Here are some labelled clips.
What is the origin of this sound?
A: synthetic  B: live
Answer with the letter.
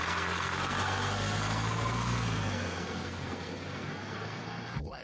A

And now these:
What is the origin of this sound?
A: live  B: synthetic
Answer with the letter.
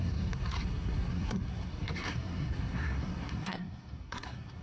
B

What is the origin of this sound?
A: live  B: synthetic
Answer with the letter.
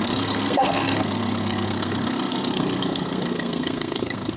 B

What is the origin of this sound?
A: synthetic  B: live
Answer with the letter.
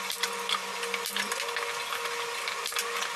B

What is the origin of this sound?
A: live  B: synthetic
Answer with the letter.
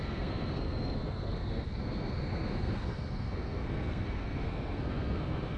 B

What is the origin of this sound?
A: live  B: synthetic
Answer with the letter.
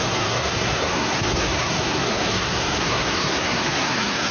B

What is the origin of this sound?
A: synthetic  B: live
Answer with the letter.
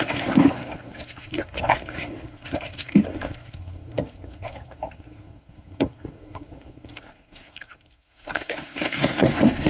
A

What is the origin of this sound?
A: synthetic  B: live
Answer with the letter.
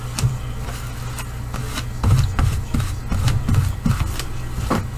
B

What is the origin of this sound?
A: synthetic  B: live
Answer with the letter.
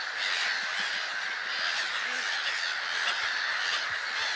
B